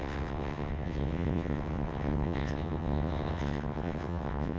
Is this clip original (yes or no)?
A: no